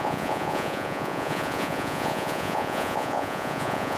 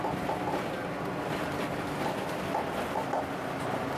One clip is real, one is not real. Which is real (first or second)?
second